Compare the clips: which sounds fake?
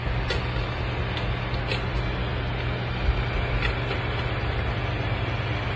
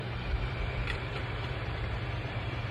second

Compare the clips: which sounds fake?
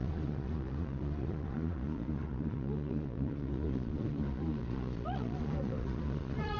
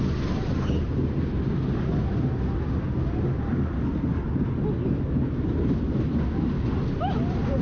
first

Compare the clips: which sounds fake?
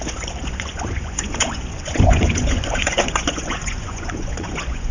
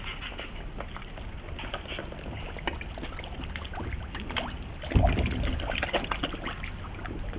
first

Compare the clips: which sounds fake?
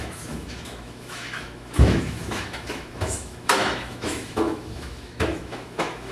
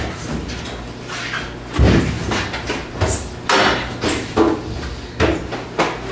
first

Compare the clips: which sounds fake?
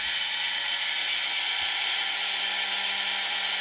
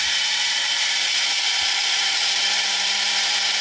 second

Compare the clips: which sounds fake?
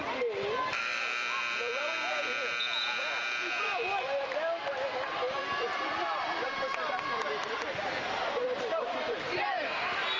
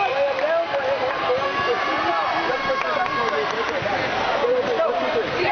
first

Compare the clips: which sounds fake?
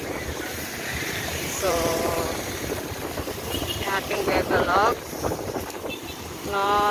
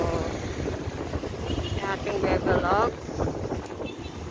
first